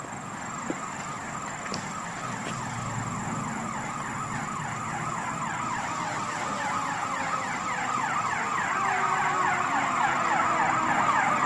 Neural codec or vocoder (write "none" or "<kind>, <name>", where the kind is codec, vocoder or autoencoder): none